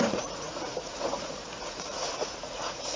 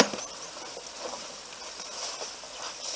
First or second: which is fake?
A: first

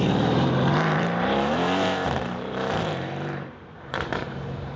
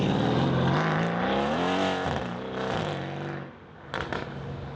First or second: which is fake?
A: first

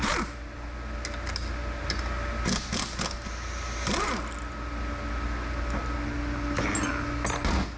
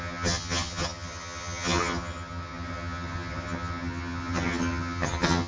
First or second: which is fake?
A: second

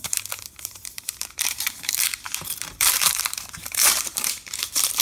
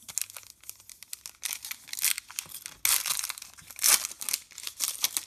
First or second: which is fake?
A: first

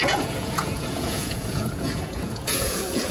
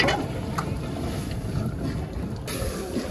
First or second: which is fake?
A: first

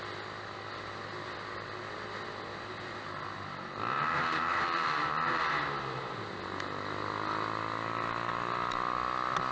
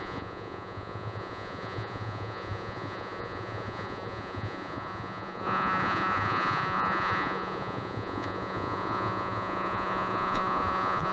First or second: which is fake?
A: second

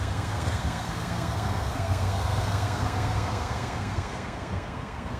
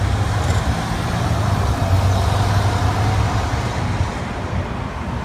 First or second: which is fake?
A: first